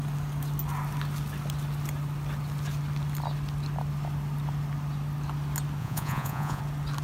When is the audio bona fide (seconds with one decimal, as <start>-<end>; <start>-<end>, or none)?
0.0-5.8; 6.6-7.0